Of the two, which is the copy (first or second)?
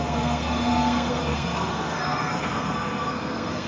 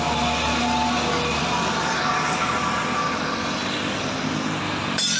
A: first